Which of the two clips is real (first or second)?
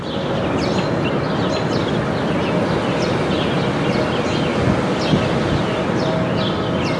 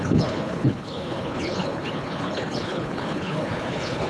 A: first